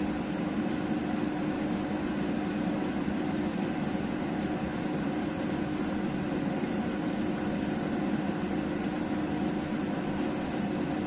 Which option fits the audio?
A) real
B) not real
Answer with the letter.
A